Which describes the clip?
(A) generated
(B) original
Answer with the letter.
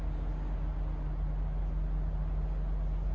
B